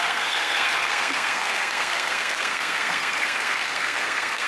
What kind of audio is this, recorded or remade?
remade